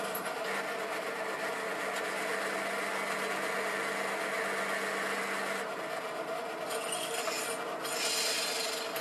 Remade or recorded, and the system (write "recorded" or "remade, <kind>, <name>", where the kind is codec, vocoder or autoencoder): recorded